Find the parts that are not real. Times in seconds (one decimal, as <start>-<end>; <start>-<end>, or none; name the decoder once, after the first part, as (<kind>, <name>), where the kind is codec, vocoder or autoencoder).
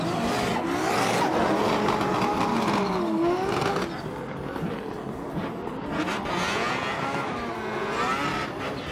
6.9-7.5 (autoencoder, DAC-VAE)